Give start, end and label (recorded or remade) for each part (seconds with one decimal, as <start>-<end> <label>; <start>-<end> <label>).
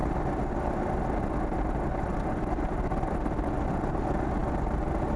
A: 0.0-5.2 recorded